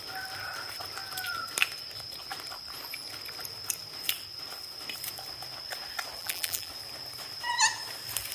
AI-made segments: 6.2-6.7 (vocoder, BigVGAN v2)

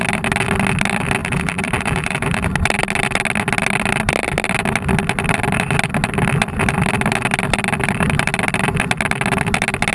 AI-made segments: 1.2-2.5 (vocoder, BigVGAN v2)

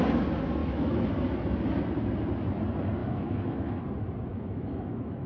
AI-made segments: 0.6-1.1 (autoencoder, DAC-VAE); 3.0-3.8; 4.3-5.3

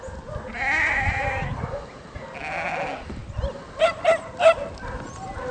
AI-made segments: none

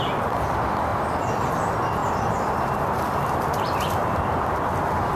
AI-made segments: 0.9-1.5 (vocoder, BigVGAN v2)